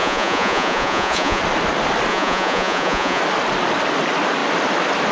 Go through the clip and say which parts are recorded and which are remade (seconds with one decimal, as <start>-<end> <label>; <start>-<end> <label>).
0.0-1.4 remade; 1.4-2.1 recorded; 2.1-3.2 remade; 3.2-5.1 recorded

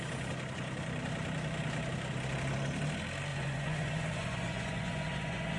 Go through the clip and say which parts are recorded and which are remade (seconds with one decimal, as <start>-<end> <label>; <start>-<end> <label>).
0.0-3.3 recorded; 3.3-5.6 remade

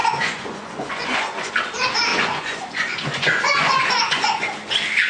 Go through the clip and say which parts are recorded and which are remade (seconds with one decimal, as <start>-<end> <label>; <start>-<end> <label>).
0.0-1.5 remade; 1.5-2.1 recorded; 2.1-4.4 remade; 4.4-5.1 recorded

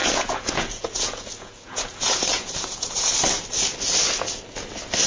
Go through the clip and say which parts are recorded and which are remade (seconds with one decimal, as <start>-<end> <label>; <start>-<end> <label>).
0.0-3.1 remade; 3.1-5.1 recorded

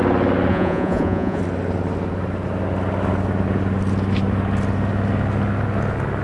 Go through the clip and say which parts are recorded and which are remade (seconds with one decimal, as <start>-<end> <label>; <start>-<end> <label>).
0.0-0.5 recorded; 0.5-1.4 remade; 1.4-6.2 recorded

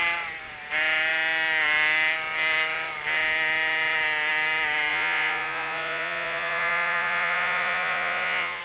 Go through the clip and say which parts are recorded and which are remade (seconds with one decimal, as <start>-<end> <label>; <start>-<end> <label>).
0.0-4.9 recorded; 4.9-8.6 remade

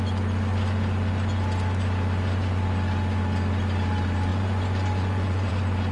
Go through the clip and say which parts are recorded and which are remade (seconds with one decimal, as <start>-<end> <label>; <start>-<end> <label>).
0.0-4.3 recorded; 4.3-5.5 remade; 5.5-5.9 recorded